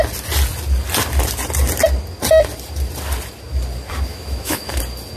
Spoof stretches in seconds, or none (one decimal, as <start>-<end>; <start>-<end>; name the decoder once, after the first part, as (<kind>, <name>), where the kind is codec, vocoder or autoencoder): 4.1-4.8 (autoencoder, DAC-VAE)